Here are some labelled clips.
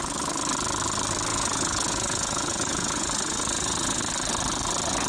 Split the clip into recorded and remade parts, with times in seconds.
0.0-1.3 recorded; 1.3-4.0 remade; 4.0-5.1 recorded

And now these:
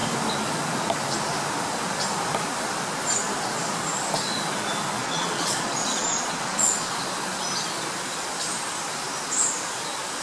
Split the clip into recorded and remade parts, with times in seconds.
0.0-5.0 recorded; 5.0-6.9 remade; 6.9-10.2 recorded

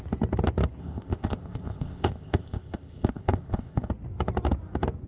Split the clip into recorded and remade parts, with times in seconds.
0.0-0.8 recorded; 0.8-3.9 remade; 3.9-5.1 recorded